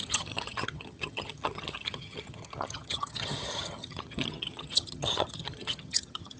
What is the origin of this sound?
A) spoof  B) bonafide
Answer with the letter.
A